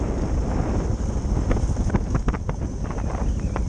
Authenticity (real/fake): real